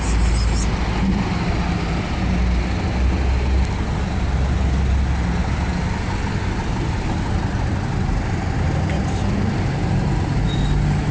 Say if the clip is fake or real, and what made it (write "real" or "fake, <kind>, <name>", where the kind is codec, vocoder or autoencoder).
real